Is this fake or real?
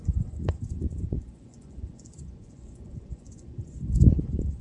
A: fake